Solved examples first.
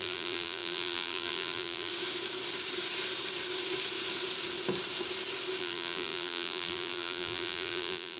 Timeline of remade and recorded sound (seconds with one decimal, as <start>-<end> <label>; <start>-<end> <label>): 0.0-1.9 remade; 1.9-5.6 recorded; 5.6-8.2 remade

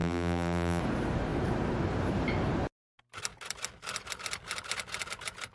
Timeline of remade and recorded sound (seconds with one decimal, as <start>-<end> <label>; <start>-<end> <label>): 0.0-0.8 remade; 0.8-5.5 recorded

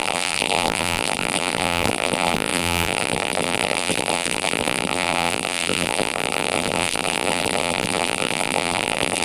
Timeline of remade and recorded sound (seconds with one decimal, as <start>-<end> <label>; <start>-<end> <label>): 0.0-9.2 remade